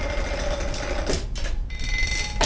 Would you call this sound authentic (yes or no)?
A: yes